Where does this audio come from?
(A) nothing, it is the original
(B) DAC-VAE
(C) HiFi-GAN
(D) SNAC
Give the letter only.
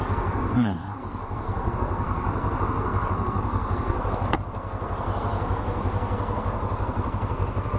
D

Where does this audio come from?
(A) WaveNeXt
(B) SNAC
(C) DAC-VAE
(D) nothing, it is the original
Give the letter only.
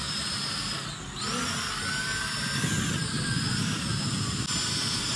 D